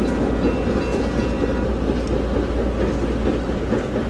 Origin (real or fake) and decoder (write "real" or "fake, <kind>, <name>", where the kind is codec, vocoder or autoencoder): real